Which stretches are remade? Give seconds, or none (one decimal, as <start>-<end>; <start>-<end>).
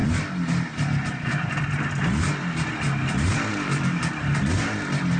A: 3.5-4.0